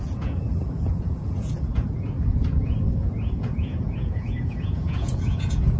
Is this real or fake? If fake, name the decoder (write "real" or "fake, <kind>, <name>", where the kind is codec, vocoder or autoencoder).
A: fake, vocoder, Vocos